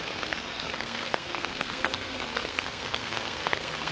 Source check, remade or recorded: remade